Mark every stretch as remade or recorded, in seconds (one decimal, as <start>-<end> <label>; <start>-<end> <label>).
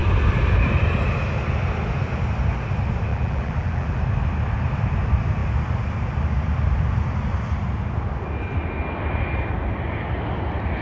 0.0-3.1 recorded; 3.1-4.0 remade; 4.0-10.8 recorded